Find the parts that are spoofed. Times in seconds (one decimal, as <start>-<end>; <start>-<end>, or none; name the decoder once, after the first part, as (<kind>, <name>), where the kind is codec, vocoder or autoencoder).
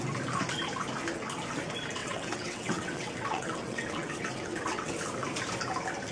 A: 2.0-4.9 (vocoder, WaveNeXt)